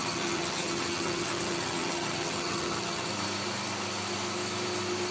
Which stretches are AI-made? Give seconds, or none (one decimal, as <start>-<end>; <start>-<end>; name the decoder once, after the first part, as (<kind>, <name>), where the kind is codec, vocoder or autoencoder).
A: 0.0-3.1 (vocoder, HiFi-GAN)